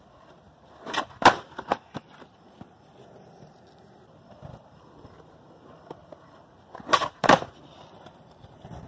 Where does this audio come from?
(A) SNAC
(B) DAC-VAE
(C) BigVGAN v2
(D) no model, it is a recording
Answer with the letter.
C